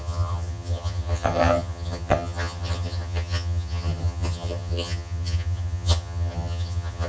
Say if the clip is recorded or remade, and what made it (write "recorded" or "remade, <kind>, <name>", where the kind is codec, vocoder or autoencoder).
remade, vocoder, HiFi-GAN